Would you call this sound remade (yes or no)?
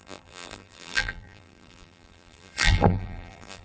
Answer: yes